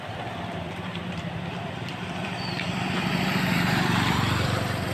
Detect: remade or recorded remade